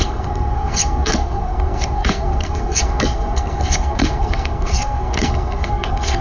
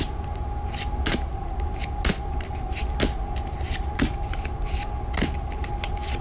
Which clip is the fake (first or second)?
first